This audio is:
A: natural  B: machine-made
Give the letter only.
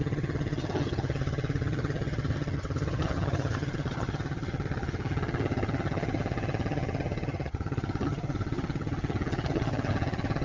B